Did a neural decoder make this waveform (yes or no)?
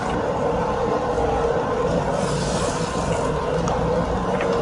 no